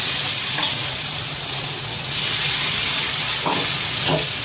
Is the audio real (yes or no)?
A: no